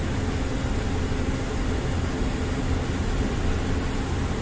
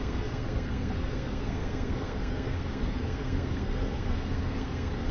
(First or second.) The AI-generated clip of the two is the second